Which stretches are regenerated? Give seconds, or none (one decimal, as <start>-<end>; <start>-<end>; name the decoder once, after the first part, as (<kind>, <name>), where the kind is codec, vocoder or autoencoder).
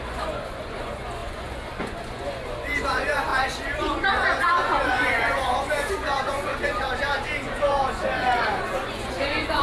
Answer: 0.0-9.6 (vocoder, Vocos)